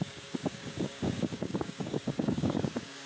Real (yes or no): no